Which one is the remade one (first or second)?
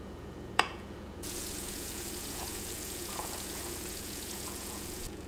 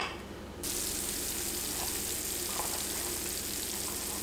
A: first